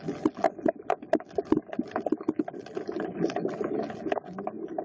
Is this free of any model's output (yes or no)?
yes